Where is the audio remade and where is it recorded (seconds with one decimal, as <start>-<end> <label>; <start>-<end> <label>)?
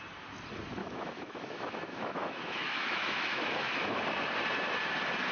0.0-0.8 recorded; 0.8-4.0 remade; 4.0-5.3 recorded